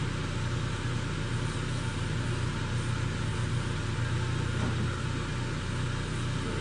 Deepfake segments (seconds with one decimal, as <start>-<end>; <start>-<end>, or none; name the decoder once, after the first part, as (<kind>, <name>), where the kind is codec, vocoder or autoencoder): none